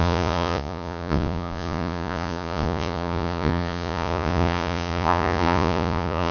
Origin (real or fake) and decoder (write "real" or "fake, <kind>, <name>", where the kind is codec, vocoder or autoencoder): fake, vocoder, Vocos